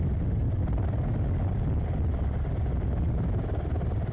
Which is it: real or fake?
real